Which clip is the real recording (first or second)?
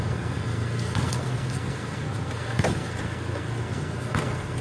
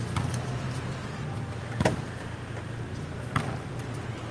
second